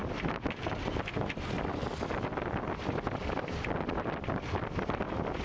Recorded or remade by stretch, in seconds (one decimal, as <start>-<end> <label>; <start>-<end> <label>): 0.0-5.4 recorded